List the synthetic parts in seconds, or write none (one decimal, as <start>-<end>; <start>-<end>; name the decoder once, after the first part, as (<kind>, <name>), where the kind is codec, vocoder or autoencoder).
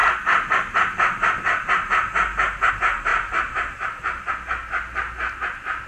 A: none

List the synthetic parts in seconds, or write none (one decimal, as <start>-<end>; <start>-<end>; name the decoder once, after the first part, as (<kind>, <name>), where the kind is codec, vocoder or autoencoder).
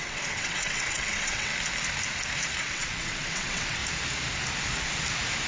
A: 0.0-1.5 (vocoder, WaveNeXt); 2.6-3.8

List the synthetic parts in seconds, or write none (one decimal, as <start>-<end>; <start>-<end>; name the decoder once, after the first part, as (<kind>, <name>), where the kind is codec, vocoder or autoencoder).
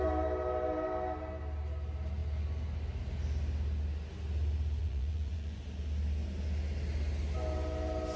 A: 4.8-5.6 (vocoder, Vocos)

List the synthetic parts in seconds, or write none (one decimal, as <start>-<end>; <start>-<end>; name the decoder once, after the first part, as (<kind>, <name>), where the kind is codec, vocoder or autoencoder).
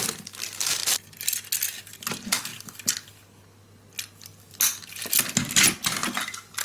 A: none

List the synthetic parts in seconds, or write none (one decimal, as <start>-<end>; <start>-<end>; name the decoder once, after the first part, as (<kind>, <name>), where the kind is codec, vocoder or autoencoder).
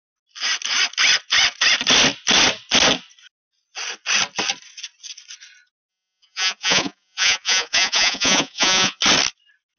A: 5.9-9.0 (vocoder, Vocos)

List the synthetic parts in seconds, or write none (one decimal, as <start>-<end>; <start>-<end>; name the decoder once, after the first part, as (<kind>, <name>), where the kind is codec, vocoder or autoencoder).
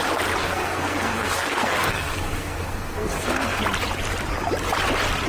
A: 0.4-3.6 (codec, SNAC)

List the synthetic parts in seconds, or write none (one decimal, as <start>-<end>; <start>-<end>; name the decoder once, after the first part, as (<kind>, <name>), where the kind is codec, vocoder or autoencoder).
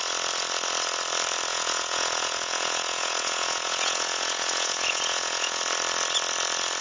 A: 1.5-5.6 (vocoder, Vocos)